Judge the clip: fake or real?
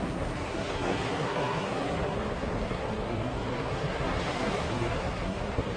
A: fake